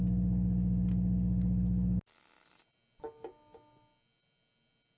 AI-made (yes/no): no